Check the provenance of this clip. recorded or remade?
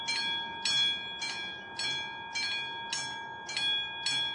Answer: recorded